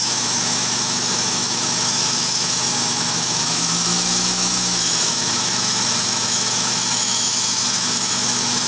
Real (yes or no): no